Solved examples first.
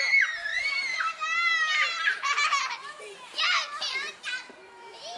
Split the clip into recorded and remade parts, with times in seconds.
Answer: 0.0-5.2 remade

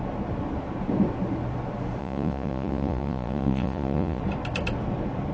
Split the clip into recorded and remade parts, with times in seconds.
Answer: 0.0-2.0 recorded; 2.0-4.2 remade; 4.2-5.3 recorded

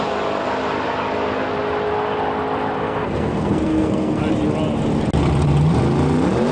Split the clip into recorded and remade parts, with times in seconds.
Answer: 0.0-2.8 recorded; 2.8-4.2 remade; 4.2-6.5 recorded

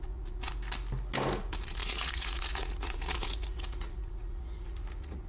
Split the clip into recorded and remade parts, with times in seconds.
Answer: 0.0-0.5 remade; 0.5-1.4 recorded; 1.4-5.3 remade

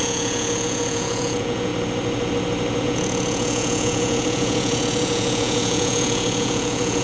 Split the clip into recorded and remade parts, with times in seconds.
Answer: 0.0-1.7 remade; 1.7-2.8 recorded; 2.8-7.0 remade

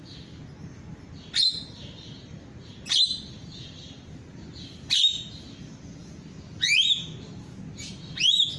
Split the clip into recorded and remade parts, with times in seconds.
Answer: 0.0-8.6 recorded

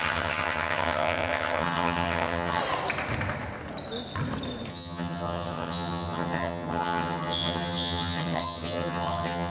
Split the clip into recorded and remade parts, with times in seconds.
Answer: 0.0-2.6 remade; 2.6-4.7 recorded; 4.7-9.5 remade

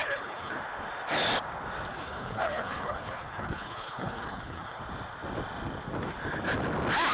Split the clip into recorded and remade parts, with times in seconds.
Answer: 0.0-0.5 remade; 0.5-1.9 recorded; 1.9-4.8 remade; 4.8-7.1 recorded